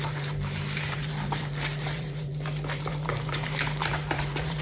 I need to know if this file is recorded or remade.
remade